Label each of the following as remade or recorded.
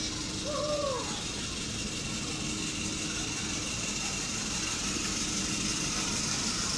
recorded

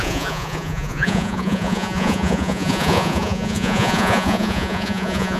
remade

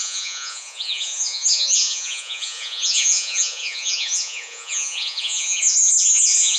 remade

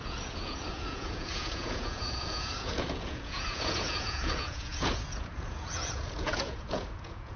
remade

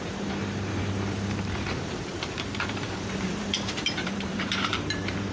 remade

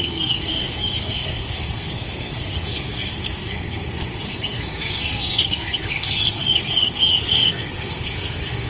remade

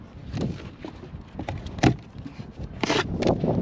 recorded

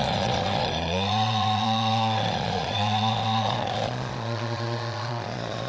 remade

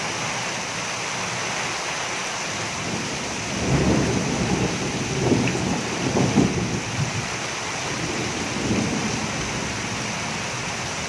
remade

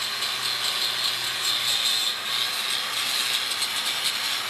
recorded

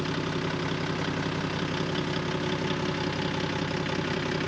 recorded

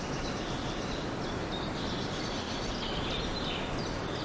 recorded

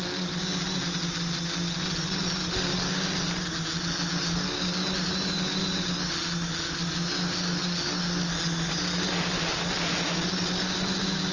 recorded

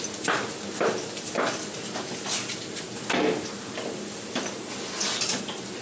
recorded